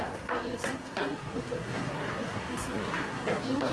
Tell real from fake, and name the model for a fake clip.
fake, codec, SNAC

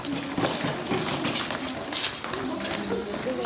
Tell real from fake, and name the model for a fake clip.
real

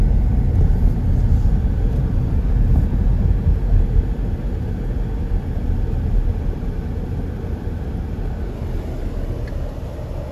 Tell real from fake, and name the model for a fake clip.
real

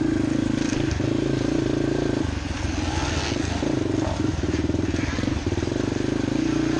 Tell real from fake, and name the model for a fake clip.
real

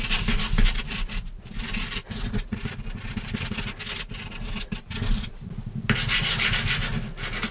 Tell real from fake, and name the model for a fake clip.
real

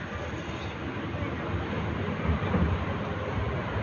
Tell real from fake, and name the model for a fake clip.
real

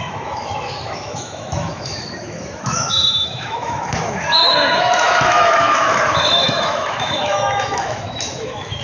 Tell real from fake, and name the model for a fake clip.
fake, autoencoder, DAC-VAE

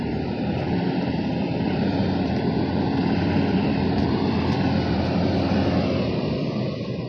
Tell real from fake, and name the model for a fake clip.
fake, vocoder, BigVGAN v2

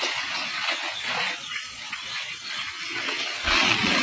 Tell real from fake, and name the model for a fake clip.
fake, vocoder, Vocos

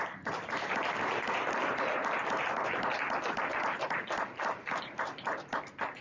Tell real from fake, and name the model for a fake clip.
real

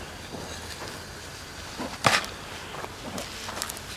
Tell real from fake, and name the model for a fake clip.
real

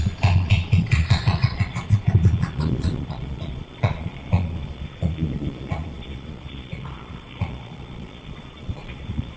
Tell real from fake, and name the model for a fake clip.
fake, vocoder, Vocos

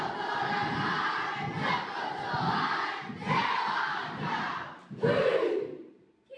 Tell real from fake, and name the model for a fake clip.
real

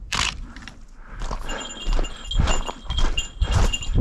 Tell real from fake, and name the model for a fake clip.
real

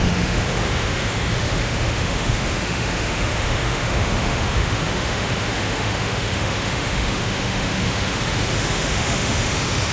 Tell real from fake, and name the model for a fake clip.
fake, autoencoder, DAC-VAE